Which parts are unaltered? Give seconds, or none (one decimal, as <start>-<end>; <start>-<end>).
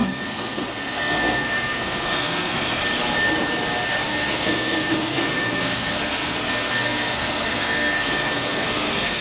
2.8-4.1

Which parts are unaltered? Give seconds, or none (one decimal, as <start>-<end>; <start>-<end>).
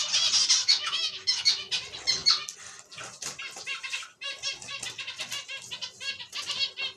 0.0-0.6; 1.7-7.0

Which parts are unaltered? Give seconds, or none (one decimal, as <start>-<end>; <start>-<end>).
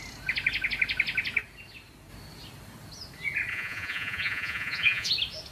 0.0-3.5; 5.1-5.5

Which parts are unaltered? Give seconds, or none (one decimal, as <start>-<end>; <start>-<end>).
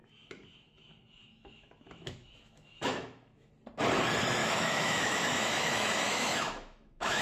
3.5-4.4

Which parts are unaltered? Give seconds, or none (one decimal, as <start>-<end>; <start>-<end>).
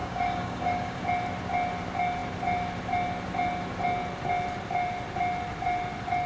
1.0-6.3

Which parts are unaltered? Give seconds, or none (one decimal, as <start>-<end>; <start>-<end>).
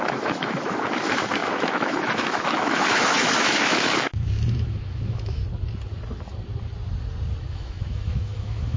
5.4-7.5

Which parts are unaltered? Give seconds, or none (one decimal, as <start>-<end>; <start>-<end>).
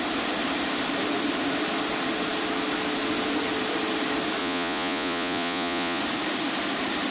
0.0-4.4; 6.0-7.1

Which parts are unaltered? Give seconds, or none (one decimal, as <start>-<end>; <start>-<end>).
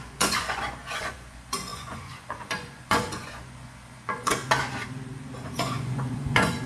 4.4-5.4